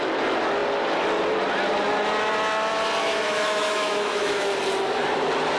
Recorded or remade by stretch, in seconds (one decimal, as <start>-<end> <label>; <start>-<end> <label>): 0.0-3.0 recorded; 3.0-4.5 remade; 4.5-5.6 recorded

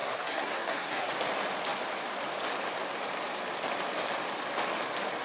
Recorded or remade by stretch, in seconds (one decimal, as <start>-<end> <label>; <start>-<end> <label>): 0.0-1.1 remade; 1.1-5.2 recorded

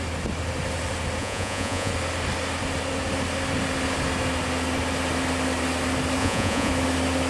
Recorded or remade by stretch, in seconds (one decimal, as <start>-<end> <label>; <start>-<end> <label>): 0.0-1.2 recorded; 1.2-1.9 remade; 1.9-6.2 recorded; 6.2-6.7 remade; 6.7-7.3 recorded

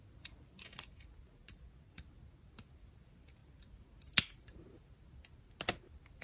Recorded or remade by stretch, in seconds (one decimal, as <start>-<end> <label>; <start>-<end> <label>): 0.0-1.4 recorded; 1.4-2.0 remade; 2.0-6.2 recorded

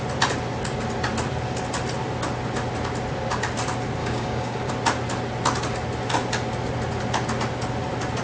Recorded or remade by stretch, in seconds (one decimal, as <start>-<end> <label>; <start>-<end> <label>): 0.0-4.0 recorded; 4.0-4.7 remade; 4.7-8.2 recorded